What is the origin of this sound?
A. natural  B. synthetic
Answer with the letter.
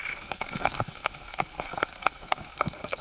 B